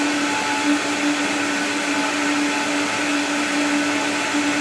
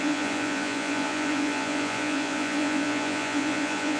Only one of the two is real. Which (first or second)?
first